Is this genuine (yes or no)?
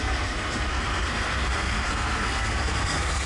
no